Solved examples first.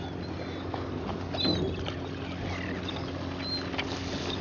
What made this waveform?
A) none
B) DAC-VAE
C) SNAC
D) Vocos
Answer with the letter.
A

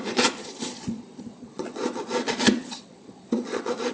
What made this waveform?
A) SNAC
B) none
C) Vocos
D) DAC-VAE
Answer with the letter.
C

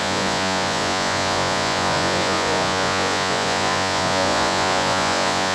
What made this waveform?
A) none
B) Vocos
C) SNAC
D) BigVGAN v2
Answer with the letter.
B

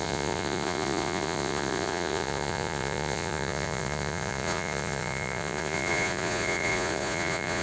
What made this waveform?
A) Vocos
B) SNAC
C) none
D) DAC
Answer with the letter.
A